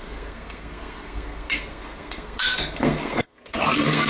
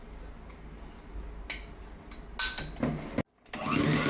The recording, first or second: second